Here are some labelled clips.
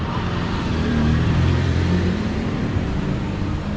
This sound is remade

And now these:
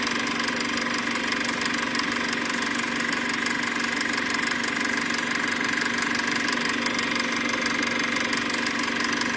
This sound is recorded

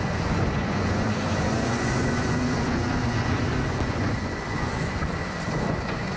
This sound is remade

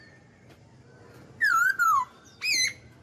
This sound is recorded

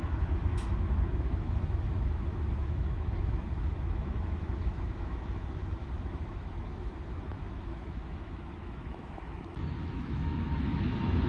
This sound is remade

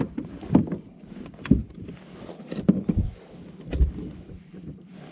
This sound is remade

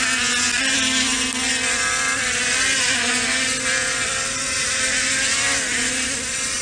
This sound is recorded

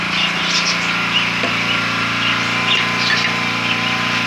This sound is recorded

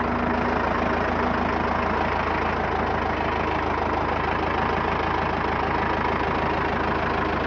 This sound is recorded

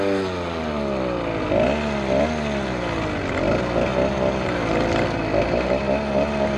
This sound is recorded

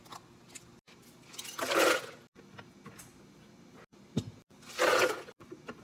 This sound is recorded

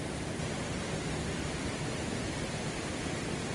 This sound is recorded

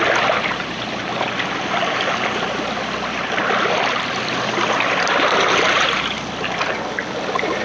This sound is remade